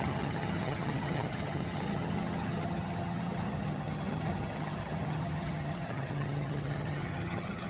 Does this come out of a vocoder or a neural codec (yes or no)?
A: yes